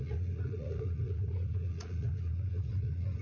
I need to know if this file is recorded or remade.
remade